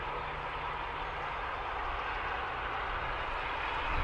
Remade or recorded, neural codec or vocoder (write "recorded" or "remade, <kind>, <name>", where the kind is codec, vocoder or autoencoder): recorded